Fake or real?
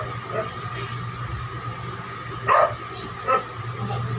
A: real